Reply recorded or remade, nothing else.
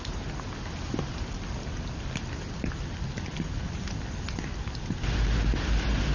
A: recorded